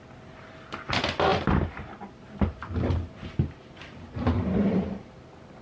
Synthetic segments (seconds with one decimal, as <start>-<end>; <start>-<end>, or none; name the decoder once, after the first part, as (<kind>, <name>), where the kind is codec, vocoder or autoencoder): none